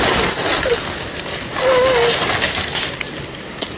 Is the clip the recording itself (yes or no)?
yes